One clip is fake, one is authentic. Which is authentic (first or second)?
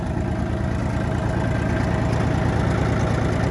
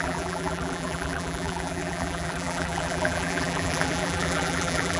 first